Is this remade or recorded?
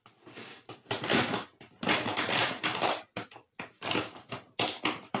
recorded